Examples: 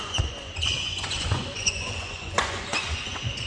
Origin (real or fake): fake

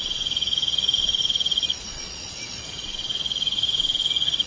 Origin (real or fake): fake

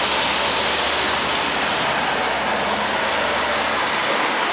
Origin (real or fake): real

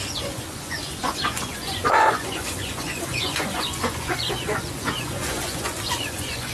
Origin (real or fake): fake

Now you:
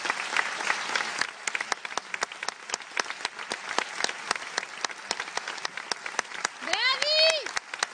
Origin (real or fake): real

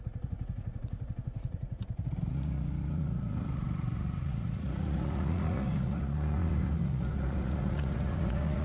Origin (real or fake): fake